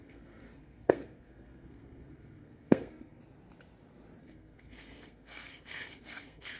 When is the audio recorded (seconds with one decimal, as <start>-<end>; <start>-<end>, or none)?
3.2-4.2